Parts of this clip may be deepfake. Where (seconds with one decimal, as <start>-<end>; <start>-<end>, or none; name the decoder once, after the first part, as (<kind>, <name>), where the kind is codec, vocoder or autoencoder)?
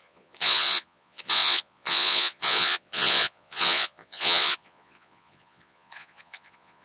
0.0-6.8 (vocoder, Vocos)